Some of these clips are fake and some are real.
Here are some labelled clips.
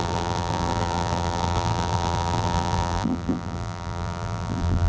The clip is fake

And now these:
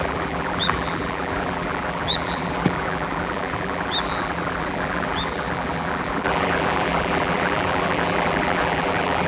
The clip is fake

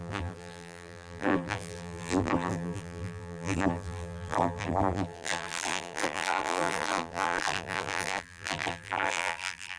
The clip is fake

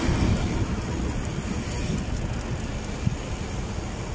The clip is real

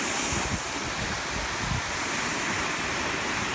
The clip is real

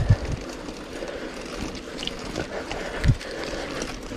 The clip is real